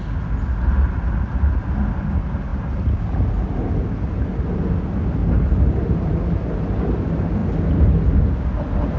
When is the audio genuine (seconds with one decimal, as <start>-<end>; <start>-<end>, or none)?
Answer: 0.0-5.2; 6.6-9.0